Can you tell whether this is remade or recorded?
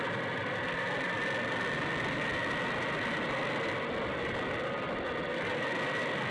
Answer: recorded